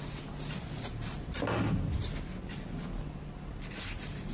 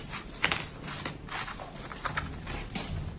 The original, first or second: first